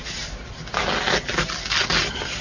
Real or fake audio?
real